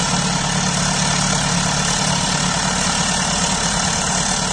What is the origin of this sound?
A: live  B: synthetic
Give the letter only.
B